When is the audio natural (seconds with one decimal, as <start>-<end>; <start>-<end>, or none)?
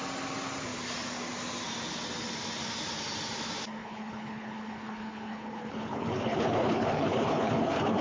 0.0-3.8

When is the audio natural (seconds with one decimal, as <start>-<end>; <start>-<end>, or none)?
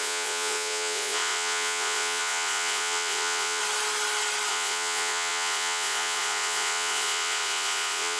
3.6-4.5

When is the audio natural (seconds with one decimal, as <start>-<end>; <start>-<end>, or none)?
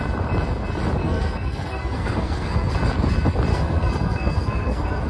0.0-1.0; 2.7-3.5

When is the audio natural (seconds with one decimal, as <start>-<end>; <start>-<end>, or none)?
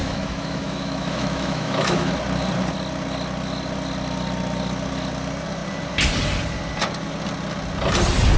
2.1-8.4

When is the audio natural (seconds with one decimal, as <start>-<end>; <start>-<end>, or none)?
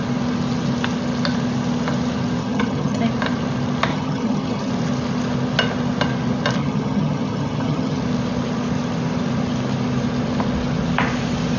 0.0-2.4; 3.0-3.9; 4.7-6.6; 8.0-11.6